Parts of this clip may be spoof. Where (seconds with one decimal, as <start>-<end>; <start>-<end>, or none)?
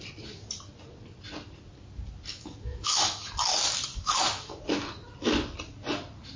2.3-3.3; 3.9-4.6